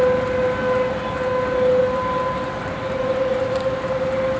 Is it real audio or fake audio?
real